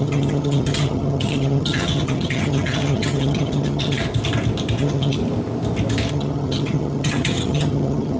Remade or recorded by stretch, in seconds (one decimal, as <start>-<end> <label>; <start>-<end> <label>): 0.0-4.0 remade; 4.0-4.8 recorded; 4.8-5.2 remade; 5.2-6.1 recorded; 6.1-8.2 remade